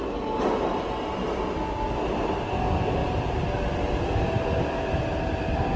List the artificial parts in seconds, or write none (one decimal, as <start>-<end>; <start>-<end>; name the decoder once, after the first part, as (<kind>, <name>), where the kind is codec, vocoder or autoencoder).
none